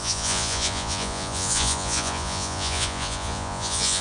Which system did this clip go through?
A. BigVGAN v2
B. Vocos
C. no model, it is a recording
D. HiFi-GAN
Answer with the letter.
B